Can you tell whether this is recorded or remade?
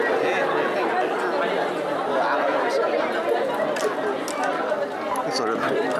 recorded